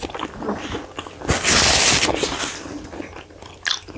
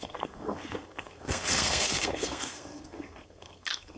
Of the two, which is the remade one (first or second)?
second